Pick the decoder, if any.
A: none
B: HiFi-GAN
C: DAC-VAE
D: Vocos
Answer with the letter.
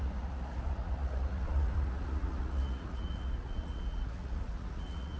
D